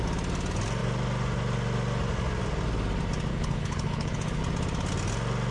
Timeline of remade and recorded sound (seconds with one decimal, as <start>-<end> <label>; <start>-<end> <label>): 0.0-3.3 recorded; 3.3-4.4 remade; 4.4-5.5 recorded